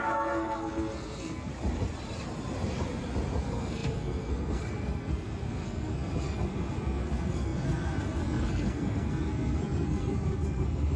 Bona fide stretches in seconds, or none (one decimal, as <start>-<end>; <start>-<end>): 1.5-3.4